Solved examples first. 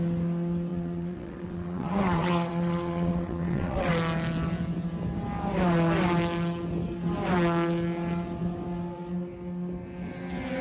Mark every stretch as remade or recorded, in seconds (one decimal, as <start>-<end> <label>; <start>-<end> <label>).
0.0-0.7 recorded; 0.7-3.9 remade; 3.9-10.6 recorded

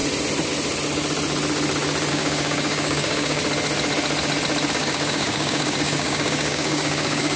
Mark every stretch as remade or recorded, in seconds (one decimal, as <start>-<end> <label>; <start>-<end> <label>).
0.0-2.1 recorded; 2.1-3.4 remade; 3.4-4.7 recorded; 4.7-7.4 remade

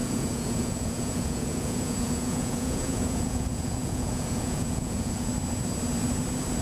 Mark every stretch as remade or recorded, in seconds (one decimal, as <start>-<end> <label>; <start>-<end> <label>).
0.0-5.3 remade; 5.3-6.6 recorded